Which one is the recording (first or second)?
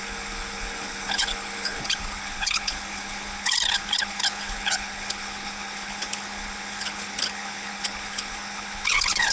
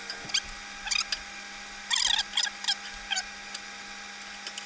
second